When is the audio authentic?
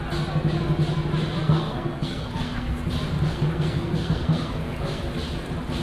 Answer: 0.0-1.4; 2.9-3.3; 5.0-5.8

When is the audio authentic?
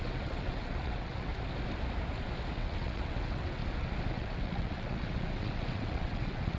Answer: 1.3-2.5; 3.6-4.1